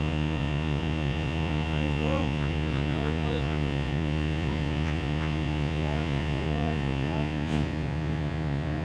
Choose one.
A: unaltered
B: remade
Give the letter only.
B